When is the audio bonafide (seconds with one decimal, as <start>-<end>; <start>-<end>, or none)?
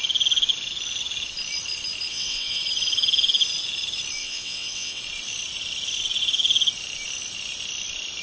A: 0.0-2.1; 2.6-4.2; 5.0-8.2